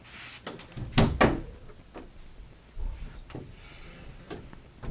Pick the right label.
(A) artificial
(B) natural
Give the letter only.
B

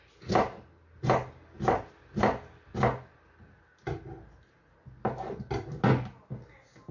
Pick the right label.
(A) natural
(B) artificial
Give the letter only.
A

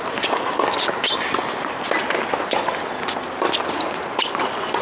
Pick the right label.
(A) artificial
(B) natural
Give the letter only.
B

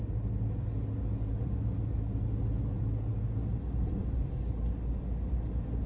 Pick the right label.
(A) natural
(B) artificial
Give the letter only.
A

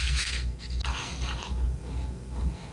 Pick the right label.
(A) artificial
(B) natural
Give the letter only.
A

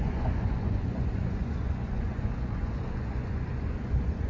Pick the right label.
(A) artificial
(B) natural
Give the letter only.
A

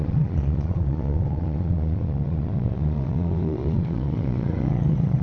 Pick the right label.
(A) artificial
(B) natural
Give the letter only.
A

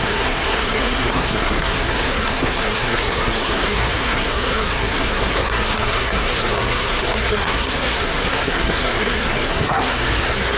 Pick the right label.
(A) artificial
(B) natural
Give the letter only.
A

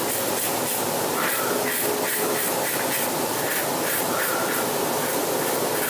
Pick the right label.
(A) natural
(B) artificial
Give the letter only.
A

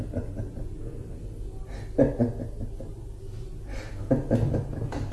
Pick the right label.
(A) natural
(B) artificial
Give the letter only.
A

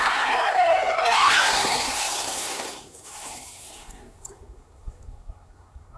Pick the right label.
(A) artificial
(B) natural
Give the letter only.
A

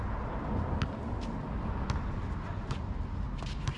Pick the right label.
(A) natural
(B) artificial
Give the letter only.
A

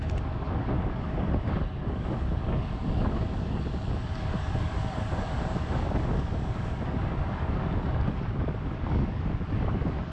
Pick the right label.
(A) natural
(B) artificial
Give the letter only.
B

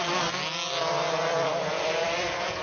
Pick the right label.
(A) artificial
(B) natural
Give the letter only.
A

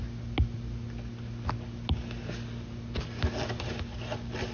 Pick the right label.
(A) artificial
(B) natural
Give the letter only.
B